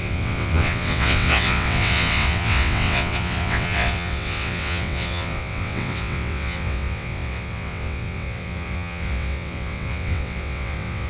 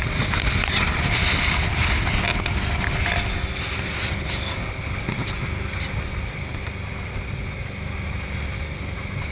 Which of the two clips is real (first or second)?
second